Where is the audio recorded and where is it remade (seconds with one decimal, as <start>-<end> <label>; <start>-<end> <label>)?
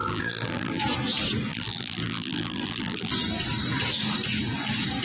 0.0-0.8 remade; 0.8-1.5 recorded; 1.5-3.1 remade; 3.1-5.0 recorded